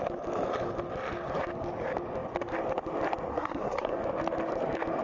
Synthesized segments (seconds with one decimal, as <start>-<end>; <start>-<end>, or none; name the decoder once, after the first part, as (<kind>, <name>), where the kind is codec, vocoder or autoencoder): 3.3-4.0 (codec, SNAC)